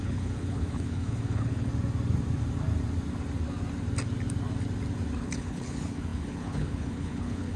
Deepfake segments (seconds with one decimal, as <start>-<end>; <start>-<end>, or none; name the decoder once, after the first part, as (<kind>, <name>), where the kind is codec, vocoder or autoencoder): 0.0-1.7 (codec, HILCodec); 5.2-7.6